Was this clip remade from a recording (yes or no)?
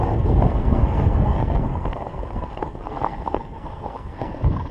yes